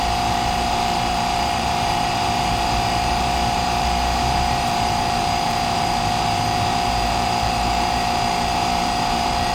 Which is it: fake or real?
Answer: fake